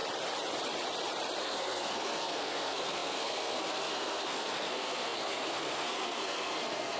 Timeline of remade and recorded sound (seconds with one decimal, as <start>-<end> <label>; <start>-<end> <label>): 0.0-1.4 recorded; 1.4-7.0 remade